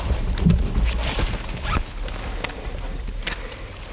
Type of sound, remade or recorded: recorded